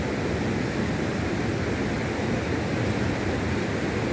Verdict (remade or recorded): recorded